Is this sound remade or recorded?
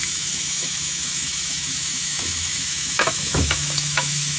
remade